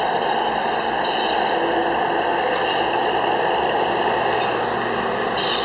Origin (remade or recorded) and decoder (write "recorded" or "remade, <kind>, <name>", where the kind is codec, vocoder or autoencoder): recorded